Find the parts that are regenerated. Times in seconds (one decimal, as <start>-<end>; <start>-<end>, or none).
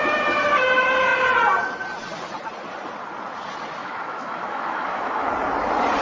3.8-5.3